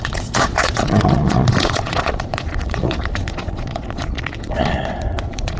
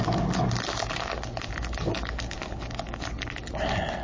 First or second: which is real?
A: second